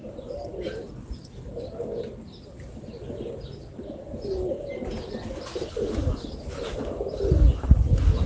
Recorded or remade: recorded